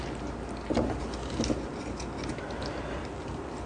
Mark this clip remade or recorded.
recorded